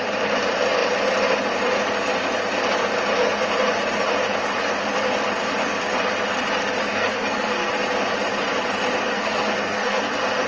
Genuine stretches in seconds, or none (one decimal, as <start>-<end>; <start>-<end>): 0.0-6.8; 7.7-9.1; 10.0-10.5